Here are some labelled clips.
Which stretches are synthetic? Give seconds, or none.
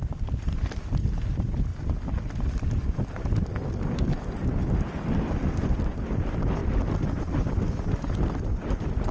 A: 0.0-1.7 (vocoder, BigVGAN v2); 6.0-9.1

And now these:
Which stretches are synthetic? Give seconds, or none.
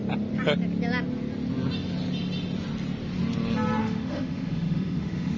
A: 3.8-5.4 (autoencoder, DAC-VAE)